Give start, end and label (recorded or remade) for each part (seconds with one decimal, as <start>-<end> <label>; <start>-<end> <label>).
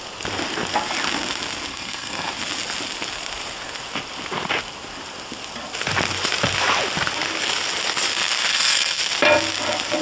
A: 0.0-1.7 recorded; 1.7-2.3 remade; 2.3-8.5 recorded; 8.5-9.0 remade; 9.0-10.0 recorded